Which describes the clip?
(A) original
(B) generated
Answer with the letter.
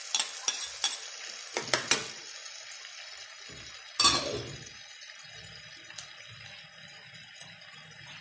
A